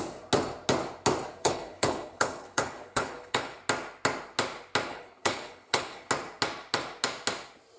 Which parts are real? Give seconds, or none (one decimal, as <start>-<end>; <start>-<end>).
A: 0.0-1.4; 3.6-4.9; 6.1-7.8